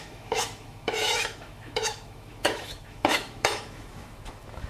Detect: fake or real fake